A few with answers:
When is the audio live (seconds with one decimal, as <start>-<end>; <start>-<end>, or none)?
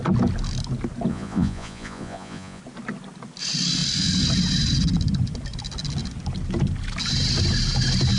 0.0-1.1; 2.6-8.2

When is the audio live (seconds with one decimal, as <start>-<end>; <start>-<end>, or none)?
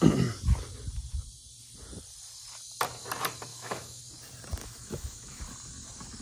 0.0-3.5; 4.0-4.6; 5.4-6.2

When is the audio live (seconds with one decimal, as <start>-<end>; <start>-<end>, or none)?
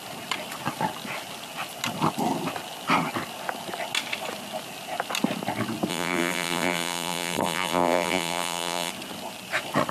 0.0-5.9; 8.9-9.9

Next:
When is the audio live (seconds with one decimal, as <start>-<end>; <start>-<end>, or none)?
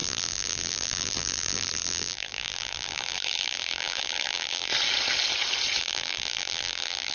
4.7-5.8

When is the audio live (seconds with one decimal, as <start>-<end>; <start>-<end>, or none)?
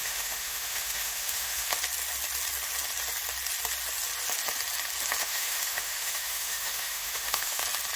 1.7-5.2; 7.6-8.0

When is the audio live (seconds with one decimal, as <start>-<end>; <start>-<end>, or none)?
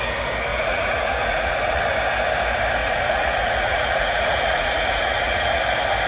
0.0-0.5; 1.9-2.8; 5.6-6.1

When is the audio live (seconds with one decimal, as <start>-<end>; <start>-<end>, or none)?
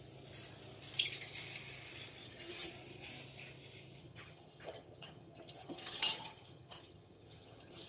0.0-2.2; 2.7-4.0